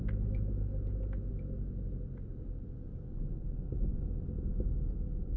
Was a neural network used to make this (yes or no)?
no